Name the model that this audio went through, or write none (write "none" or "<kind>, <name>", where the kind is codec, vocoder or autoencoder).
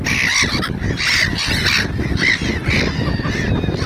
none